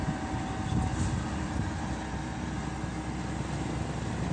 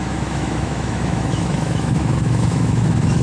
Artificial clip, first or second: second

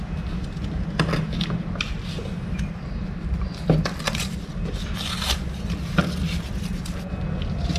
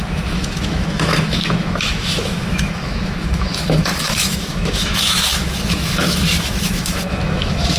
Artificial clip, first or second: second